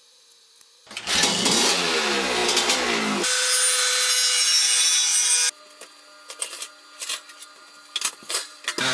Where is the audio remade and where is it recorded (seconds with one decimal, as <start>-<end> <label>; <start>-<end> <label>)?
0.0-8.9 recorded